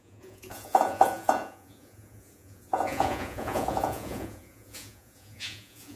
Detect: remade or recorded remade